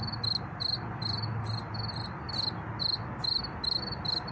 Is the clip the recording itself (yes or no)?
yes